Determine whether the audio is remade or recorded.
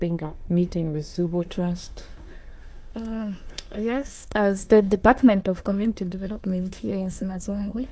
remade